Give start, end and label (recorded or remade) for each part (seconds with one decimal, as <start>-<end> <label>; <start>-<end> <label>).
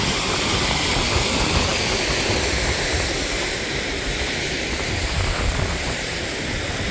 0.0-6.9 recorded